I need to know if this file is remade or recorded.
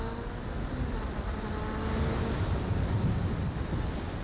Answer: recorded